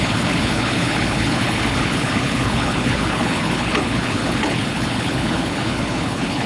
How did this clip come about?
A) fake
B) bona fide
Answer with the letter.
A